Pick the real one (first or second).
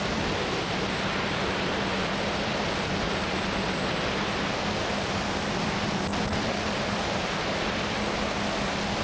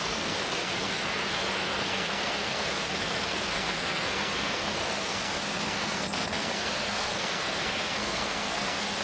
first